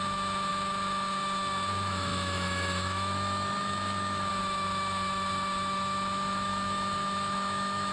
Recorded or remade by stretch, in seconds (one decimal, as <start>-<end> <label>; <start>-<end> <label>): 0.0-7.9 remade